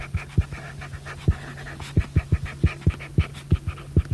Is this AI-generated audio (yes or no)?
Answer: no